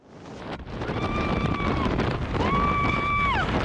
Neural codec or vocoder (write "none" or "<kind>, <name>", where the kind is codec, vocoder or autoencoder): none